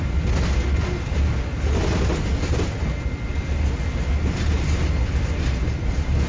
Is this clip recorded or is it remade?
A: recorded